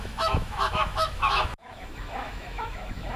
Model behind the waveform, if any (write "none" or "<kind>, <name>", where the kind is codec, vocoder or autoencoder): autoencoder, DAC-VAE